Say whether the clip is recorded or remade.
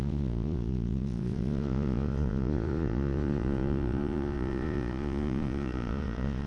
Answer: remade